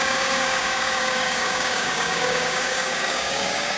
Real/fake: fake